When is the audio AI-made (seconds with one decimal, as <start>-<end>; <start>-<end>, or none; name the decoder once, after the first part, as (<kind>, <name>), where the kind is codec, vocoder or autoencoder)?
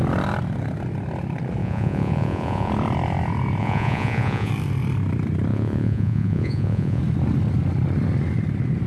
1.6-2.7 (vocoder, Vocos); 3.6-4.5; 5.5-7.0